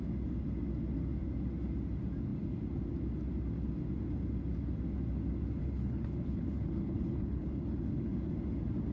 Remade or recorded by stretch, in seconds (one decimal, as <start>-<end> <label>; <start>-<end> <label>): 0.0-5.6 recorded; 5.6-8.3 remade; 8.3-8.9 recorded